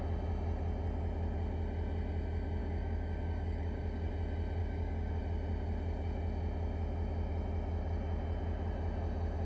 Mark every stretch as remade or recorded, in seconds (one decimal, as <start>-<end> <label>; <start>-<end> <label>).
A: 0.0-2.6 recorded; 2.6-4.1 remade; 4.1-4.6 recorded; 4.6-5.2 remade; 5.2-9.4 recorded